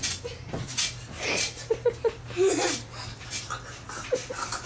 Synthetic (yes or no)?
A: no